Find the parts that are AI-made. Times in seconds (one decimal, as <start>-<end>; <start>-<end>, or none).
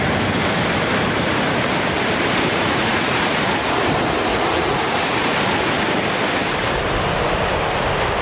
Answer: 2.5-3.4; 4.3-5.3